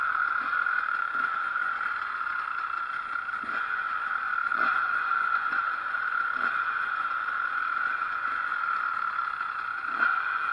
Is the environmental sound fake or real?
fake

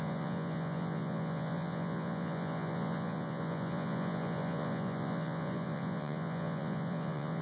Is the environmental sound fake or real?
fake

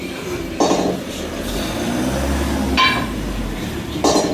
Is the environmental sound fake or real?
real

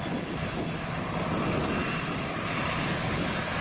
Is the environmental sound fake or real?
real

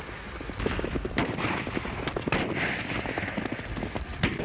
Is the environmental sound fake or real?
real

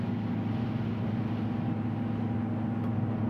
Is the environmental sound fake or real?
real